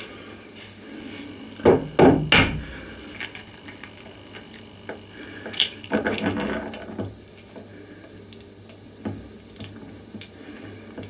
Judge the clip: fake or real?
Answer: real